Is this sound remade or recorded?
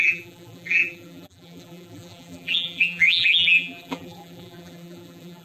remade